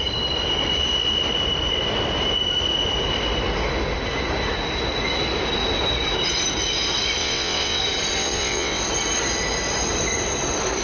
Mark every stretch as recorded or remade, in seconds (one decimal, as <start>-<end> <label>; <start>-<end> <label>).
0.0-7.2 recorded; 7.2-7.8 remade; 7.8-8.2 recorded; 8.2-8.8 remade; 8.8-10.8 recorded